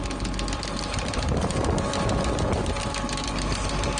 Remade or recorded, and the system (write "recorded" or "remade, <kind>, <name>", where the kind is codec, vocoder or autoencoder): recorded